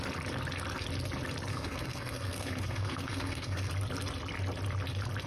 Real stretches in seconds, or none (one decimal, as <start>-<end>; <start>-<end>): 0.0-1.5; 3.7-5.3